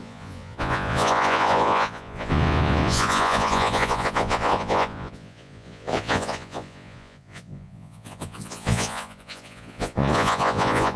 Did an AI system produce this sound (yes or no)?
yes